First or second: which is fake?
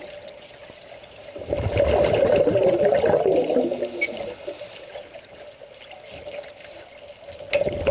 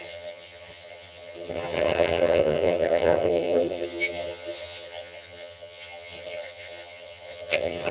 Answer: second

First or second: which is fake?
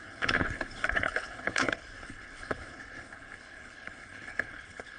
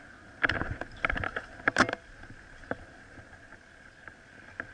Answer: first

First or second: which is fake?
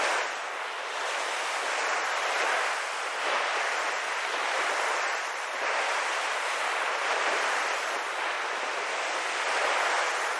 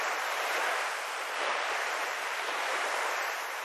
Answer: second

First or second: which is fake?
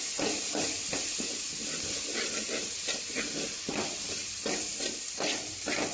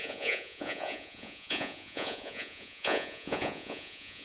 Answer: second